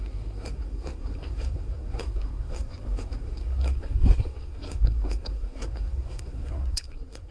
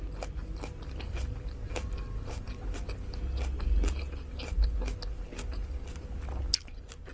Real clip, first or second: second